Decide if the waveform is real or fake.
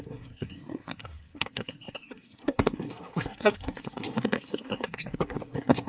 fake